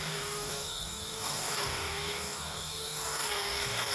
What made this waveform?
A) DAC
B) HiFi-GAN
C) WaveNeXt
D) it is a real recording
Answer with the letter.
A